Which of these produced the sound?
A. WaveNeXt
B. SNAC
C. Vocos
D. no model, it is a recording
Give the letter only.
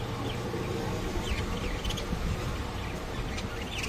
D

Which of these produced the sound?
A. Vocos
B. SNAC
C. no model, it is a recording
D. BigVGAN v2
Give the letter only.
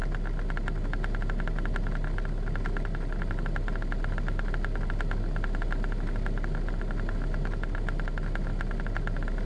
C